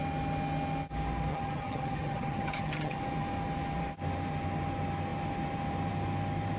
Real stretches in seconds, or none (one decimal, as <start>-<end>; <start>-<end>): 0.0-1.3; 3.0-6.6